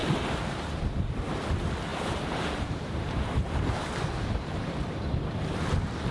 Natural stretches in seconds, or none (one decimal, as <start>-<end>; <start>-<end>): 0.8-1.9; 4.7-6.1